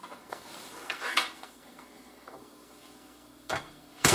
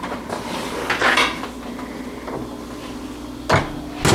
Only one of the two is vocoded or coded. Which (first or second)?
first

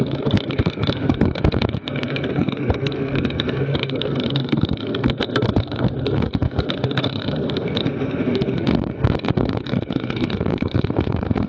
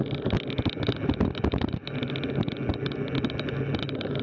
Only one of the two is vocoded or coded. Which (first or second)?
first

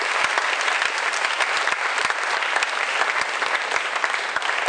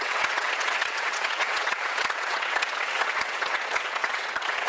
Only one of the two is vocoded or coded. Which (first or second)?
second